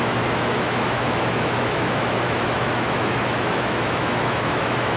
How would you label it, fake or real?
fake